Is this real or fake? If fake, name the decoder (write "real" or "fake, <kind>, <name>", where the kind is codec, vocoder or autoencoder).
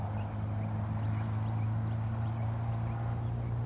real